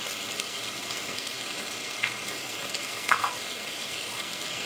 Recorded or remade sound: remade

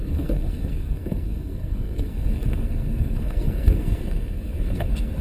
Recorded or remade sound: remade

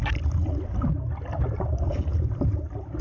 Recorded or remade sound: recorded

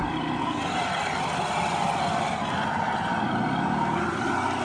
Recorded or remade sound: recorded